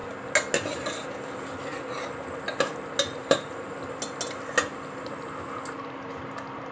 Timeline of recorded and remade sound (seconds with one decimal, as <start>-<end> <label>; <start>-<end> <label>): 0.0-6.7 recorded